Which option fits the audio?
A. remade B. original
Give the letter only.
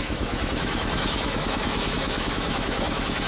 A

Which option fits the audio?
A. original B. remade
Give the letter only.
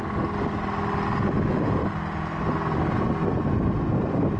A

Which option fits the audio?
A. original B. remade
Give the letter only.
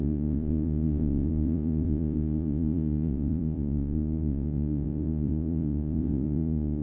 B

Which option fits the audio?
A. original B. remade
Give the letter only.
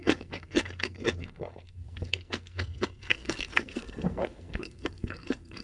B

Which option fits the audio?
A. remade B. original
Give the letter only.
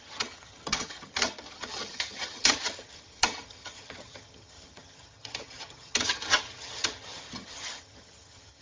A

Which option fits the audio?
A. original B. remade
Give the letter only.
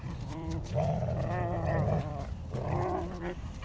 B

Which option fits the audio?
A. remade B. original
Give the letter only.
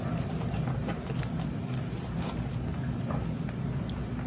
B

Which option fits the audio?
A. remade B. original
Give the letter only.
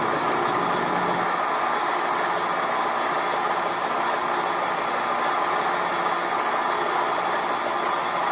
B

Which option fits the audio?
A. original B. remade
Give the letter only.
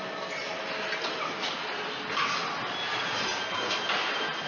A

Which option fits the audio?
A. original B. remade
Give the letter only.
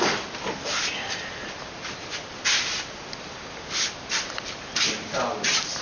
A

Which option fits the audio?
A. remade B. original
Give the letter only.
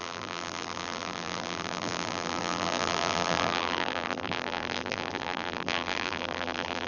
A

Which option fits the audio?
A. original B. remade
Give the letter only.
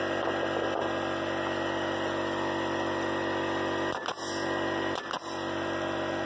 A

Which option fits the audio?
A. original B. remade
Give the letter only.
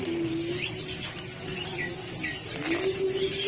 A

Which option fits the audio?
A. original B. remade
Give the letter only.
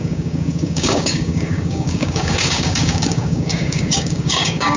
B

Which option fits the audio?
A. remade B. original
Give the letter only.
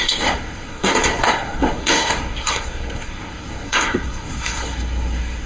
A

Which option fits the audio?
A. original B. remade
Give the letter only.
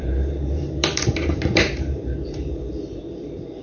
B